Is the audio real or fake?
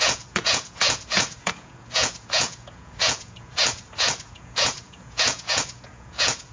fake